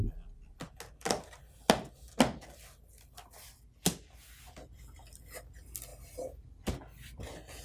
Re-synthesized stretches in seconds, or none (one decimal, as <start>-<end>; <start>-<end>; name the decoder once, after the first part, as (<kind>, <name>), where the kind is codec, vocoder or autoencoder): 5.9-6.6 (vocoder, BigVGAN v2)